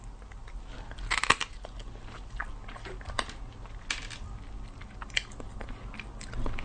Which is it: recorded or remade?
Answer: recorded